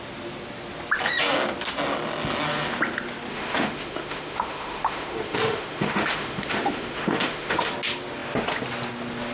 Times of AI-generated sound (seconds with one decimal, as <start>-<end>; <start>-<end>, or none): 3.3-7.7